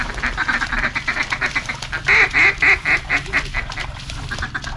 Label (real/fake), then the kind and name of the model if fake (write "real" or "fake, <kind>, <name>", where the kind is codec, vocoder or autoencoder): real